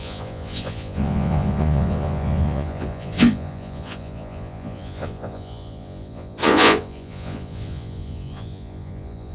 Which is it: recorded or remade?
remade